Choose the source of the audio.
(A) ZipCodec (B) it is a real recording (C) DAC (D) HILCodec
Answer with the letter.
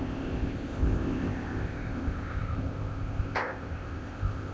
A